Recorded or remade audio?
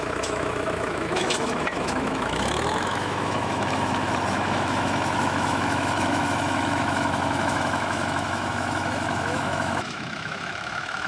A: remade